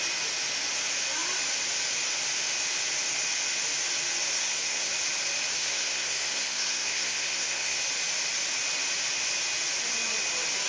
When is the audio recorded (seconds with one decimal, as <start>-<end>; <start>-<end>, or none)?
0.0-4.3; 4.9-5.6; 7.8-10.7